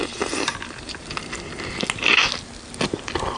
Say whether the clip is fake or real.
real